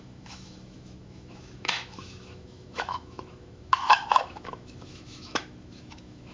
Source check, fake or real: fake